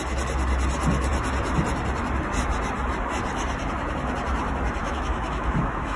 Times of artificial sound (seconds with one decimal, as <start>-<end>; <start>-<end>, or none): 4.8-6.0